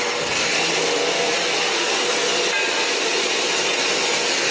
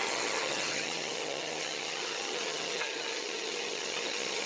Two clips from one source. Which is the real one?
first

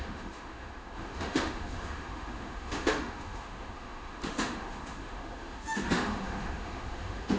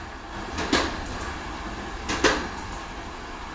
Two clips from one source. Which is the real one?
second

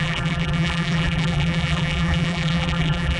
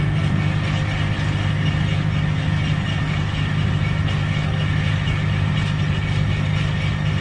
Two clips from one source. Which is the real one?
second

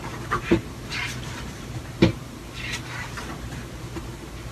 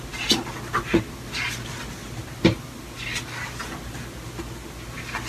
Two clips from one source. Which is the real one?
second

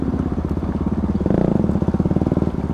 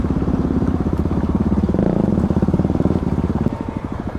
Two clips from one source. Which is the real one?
first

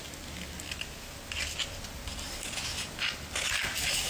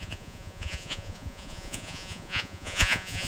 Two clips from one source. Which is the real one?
first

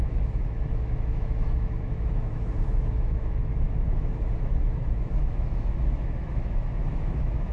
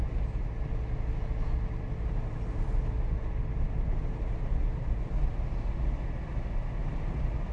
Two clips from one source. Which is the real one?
second